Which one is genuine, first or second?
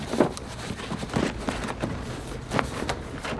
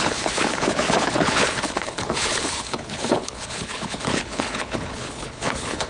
first